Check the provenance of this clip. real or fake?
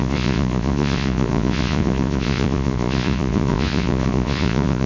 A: fake